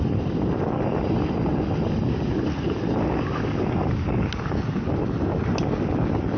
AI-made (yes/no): no